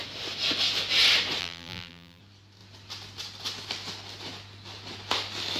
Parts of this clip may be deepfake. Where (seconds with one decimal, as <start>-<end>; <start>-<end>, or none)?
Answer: 1.4-2.2